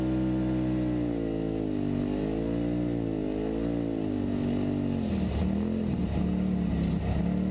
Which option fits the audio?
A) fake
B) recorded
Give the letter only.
B